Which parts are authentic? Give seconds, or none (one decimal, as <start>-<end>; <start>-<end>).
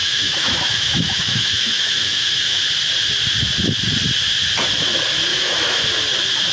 2.6-5.3; 5.8-6.5